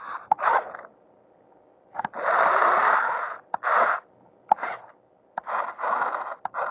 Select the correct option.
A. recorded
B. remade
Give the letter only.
A